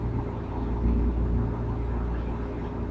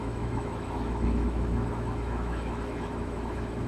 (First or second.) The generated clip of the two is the second